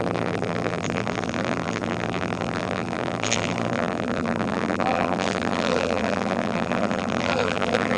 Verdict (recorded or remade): remade